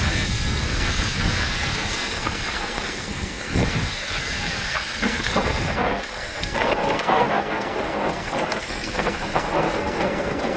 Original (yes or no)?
no